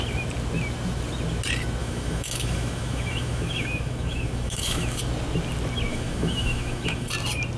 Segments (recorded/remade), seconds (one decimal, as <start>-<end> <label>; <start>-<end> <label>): 0.0-1.8 recorded; 1.8-5.0 remade; 5.0-5.9 recorded; 5.9-7.1 remade; 7.1-7.6 recorded